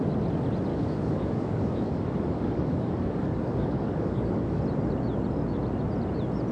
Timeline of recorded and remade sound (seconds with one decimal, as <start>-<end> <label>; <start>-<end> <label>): 0.0-0.7 recorded; 0.7-4.6 remade; 4.6-6.5 recorded